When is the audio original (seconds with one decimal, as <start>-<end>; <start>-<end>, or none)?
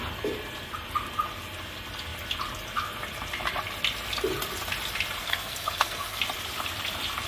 0.0-5.2; 6.2-7.3